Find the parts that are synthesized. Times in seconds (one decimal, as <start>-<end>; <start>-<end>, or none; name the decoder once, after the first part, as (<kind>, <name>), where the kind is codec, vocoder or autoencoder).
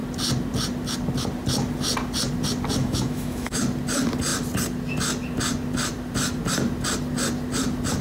2.8-3.6 (autoencoder, DAC-VAE)